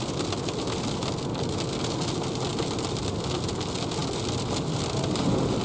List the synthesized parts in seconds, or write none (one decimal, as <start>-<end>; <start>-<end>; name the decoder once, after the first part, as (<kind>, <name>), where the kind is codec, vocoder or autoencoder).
none